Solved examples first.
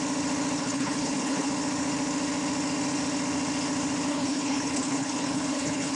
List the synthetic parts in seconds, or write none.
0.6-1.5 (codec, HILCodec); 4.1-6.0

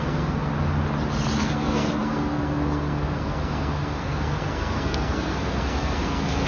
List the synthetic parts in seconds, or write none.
0.0-0.5 (codec, SNAC); 1.4-6.5